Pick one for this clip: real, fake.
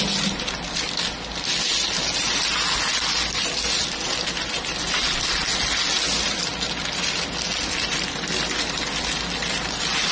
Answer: real